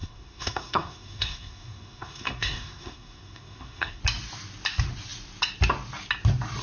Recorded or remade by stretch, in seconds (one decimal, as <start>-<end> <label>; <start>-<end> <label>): 0.0-4.0 remade; 4.0-6.6 recorded